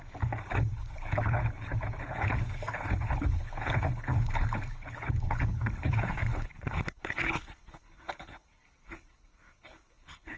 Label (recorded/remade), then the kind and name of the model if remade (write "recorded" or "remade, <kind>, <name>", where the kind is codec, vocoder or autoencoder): remade, codec, HILCodec